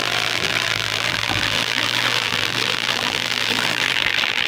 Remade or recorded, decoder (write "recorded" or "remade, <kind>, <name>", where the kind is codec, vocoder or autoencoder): remade, vocoder, BigVGAN v2